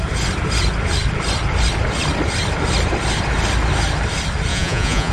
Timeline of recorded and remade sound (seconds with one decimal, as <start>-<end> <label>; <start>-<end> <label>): 0.0-4.5 recorded; 4.5-5.1 remade